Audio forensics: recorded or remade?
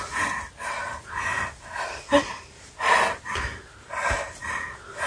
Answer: recorded